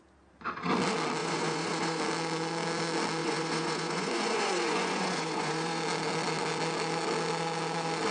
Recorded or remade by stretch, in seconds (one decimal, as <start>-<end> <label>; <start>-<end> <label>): 0.0-1.2 recorded; 1.2-2.0 remade; 2.0-3.2 recorded; 3.2-5.8 remade; 5.8-8.1 recorded

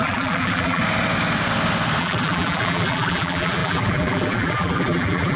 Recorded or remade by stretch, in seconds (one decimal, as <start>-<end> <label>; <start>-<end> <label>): 0.0-0.8 remade; 0.8-2.0 recorded; 2.0-5.4 remade

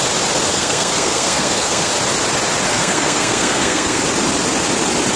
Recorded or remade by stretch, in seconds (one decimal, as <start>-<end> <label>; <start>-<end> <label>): 0.0-0.5 recorded; 0.5-1.9 remade; 1.9-2.7 recorded; 2.7-4.0 remade; 4.0-5.2 recorded

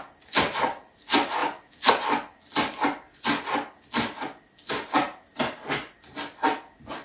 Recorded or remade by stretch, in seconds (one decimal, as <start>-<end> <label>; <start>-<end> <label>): 0.0-1.4 recorded; 1.4-1.9 remade; 1.9-7.0 recorded

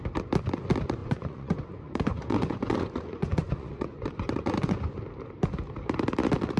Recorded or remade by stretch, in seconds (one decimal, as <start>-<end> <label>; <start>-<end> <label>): 0.0-1.0 recorded; 1.0-5.0 remade; 5.0-6.6 recorded